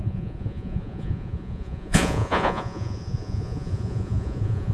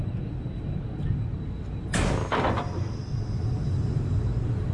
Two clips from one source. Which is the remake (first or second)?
first